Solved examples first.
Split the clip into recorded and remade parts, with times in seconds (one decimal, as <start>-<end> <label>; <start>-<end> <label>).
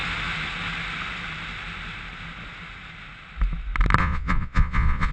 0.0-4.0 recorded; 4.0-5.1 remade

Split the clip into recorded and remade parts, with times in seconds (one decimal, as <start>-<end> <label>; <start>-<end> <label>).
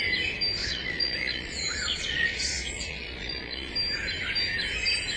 0.0-0.6 recorded; 0.6-3.7 remade; 3.7-5.2 recorded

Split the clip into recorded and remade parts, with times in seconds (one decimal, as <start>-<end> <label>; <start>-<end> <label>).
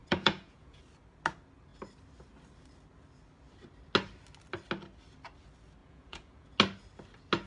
0.0-0.8 remade; 0.8-5.8 recorded; 5.8-6.5 remade; 6.5-7.5 recorded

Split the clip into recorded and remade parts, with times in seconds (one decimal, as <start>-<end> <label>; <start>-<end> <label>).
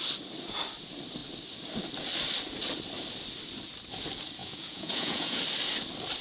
0.0-4.4 recorded; 4.4-5.4 remade; 5.4-6.2 recorded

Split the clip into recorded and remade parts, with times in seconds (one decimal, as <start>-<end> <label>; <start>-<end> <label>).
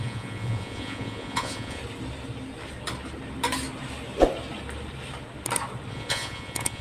0.0-1.8 remade; 1.8-5.9 recorded; 5.9-6.8 remade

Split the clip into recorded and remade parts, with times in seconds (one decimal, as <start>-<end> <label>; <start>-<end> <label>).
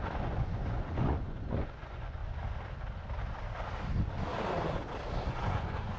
0.0-2.2 remade; 2.2-5.3 recorded; 5.3-6.0 remade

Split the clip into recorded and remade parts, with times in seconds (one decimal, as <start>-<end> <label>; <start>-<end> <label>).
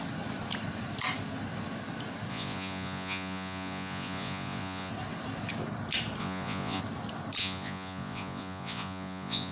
0.0-2.3 recorded; 2.3-4.9 remade; 4.9-6.2 recorded; 6.2-6.8 remade; 6.8-7.4 recorded; 7.4-9.5 remade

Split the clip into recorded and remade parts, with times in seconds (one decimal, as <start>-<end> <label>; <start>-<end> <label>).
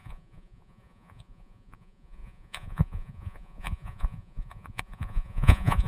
0.0-5.9 remade